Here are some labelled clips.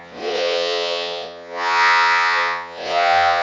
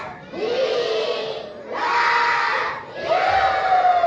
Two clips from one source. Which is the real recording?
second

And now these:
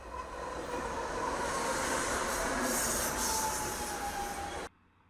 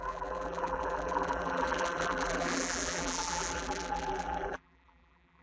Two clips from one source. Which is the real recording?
first